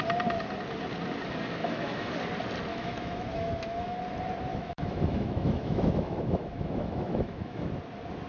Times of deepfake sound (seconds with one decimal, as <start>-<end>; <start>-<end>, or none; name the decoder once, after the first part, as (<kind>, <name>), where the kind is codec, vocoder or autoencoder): 1.6-2.1 (autoencoder, DAC-VAE); 2.7-4.0; 4.5-7.7